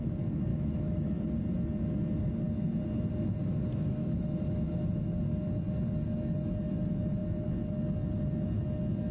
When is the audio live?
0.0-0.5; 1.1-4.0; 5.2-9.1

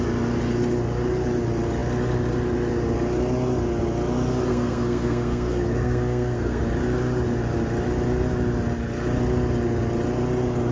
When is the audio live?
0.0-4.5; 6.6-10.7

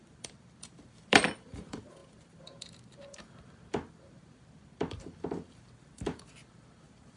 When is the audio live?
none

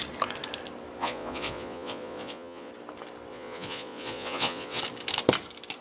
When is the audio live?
0.0-1.0; 2.7-3.3; 4.8-5.8

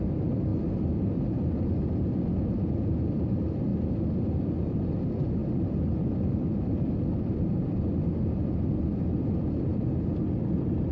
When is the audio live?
0.5-2.5; 3.7-4.4